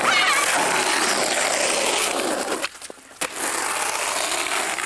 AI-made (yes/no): no